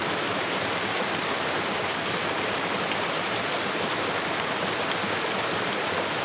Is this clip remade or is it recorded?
recorded